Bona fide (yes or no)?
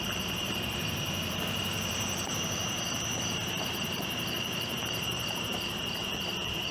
no